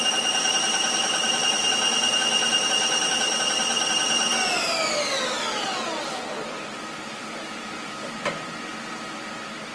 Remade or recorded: recorded